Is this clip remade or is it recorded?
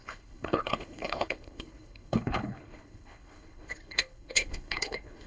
remade